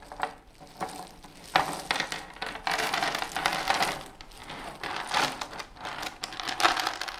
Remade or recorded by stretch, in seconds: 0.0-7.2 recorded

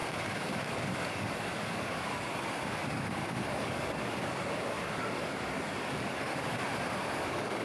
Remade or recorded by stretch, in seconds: 0.0-6.6 remade; 6.6-7.1 recorded; 7.1-7.6 remade

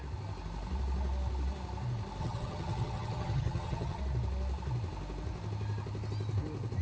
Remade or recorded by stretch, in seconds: 0.0-2.2 recorded; 2.2-4.0 remade; 4.0-6.8 recorded